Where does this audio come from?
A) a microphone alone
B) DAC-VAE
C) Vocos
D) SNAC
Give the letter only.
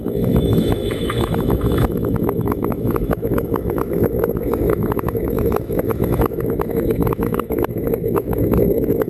B